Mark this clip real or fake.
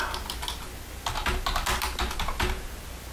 real